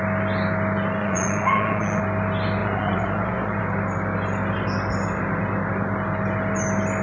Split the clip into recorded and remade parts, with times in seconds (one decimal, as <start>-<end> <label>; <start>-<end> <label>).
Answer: 0.0-1.0 recorded; 1.0-2.0 remade; 2.0-2.6 recorded; 2.6-3.6 remade; 3.6-7.0 recorded